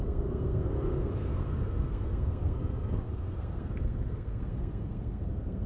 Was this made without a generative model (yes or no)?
no